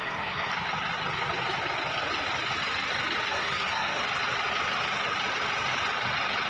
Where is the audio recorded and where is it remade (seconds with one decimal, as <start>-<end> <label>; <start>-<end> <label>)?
0.0-0.5 remade; 0.5-3.3 recorded; 3.3-4.0 remade; 4.0-6.5 recorded